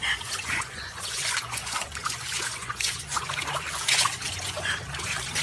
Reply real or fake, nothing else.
fake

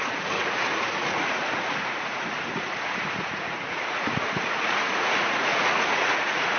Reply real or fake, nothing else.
fake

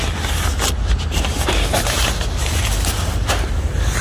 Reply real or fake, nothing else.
real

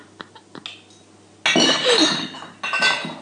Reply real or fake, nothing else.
real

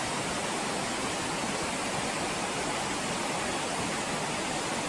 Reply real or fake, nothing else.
real